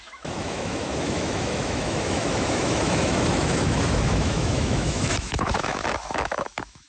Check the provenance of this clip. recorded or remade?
remade